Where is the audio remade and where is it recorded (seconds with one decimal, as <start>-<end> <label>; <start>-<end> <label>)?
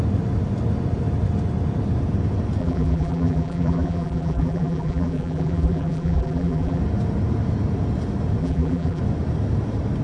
0.0-2.6 recorded; 2.6-6.8 remade; 6.8-8.4 recorded; 8.4-9.0 remade; 9.0-10.0 recorded